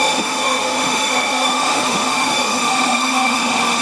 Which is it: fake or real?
fake